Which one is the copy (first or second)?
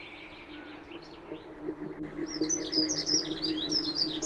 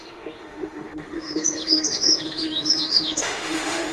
second